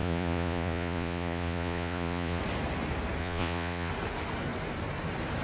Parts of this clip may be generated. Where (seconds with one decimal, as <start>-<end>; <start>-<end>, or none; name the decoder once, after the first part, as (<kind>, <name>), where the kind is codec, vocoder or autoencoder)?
0.0-2.4 (vocoder, Vocos); 3.2-3.9